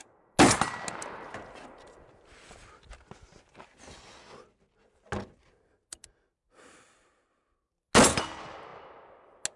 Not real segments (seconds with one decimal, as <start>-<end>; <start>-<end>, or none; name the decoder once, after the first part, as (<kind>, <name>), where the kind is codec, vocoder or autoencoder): none